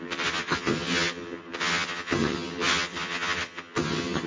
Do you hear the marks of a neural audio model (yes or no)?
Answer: yes